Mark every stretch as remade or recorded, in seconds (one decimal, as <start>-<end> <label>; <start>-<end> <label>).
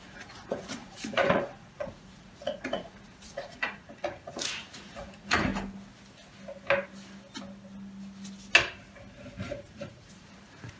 0.0-5.5 remade; 5.5-9.5 recorded; 9.5-10.8 remade